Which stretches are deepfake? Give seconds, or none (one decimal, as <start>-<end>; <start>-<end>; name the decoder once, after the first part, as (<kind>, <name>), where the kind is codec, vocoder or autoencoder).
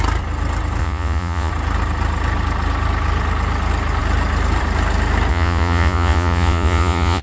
0.8-1.5 (vocoder, Vocos); 5.3-7.2